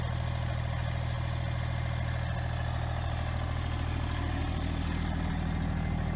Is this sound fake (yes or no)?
no